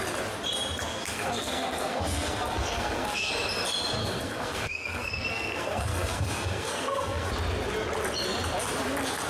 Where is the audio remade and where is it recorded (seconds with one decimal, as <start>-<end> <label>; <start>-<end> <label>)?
0.0-0.9 recorded; 0.9-3.3 remade; 3.3-4.0 recorded; 4.0-7.3 remade; 7.3-9.3 recorded